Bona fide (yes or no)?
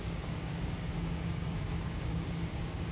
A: no